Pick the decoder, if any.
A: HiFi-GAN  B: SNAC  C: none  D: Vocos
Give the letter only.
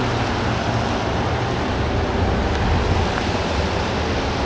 C